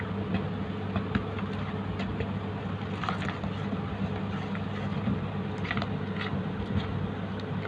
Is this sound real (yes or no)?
yes